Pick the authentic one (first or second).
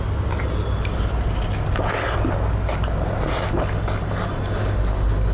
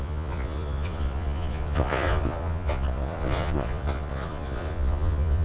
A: first